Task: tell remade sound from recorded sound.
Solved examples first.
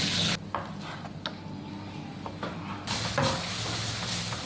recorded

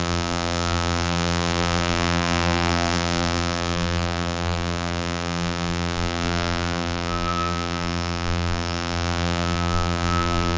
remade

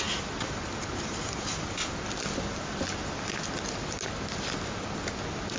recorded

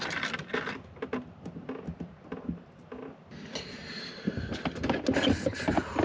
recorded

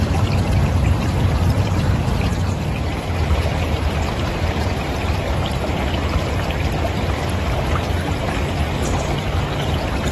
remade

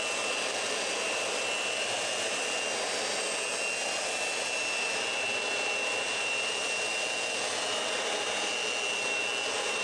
recorded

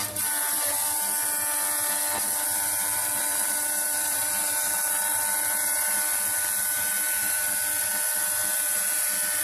remade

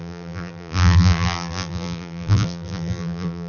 remade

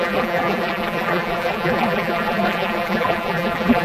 remade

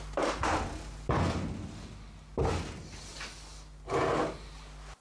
recorded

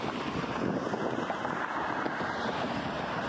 recorded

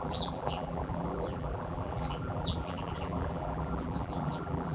remade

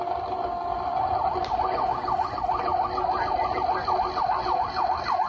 recorded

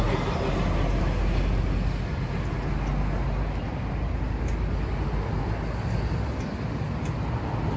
recorded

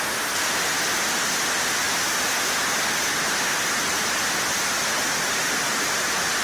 recorded